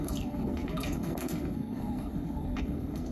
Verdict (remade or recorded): remade